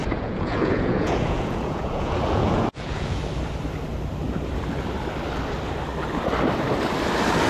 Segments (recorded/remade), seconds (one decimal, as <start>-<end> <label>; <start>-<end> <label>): 0.0-3.2 remade; 3.2-7.5 recorded